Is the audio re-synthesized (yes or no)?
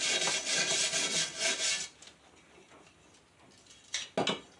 no